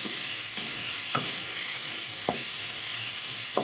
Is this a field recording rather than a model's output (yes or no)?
no